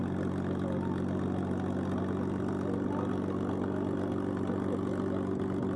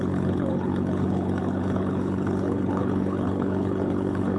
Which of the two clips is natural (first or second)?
first